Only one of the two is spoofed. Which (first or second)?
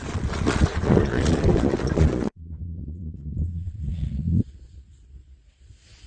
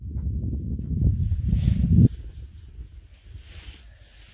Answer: first